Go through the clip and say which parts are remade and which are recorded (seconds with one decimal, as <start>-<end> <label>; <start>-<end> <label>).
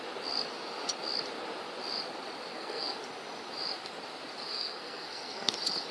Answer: 0.0-2.5 recorded; 2.5-3.0 remade; 3.0-4.5 recorded; 4.5-5.5 remade; 5.5-5.9 recorded